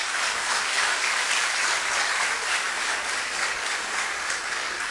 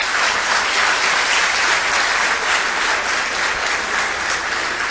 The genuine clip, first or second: second